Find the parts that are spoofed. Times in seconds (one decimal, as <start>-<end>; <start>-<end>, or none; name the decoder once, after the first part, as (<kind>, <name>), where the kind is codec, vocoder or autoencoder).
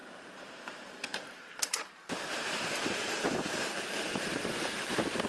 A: 0.0-5.3 (vocoder, BigVGAN v2)